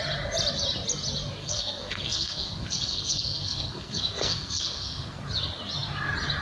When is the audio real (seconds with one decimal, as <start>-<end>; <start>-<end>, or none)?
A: 0.0-1.4; 5.2-6.4